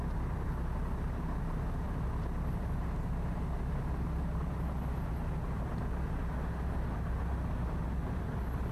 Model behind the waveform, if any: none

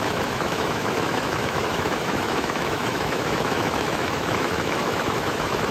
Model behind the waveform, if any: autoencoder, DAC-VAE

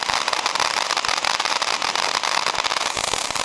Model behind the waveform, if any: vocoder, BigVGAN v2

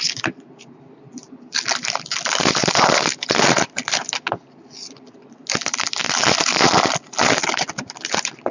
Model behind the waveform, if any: none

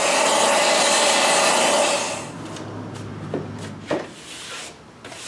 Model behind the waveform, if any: none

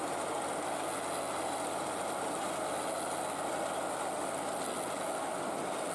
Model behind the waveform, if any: none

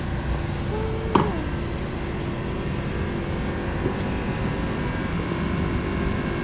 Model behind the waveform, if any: none